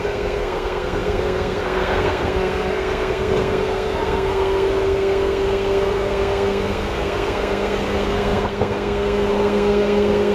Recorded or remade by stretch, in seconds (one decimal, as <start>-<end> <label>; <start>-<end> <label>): 0.0-10.3 remade